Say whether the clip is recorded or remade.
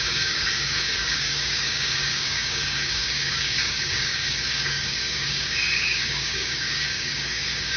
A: remade